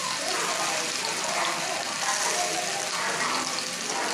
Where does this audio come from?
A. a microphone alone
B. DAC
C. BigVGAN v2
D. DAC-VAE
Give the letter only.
A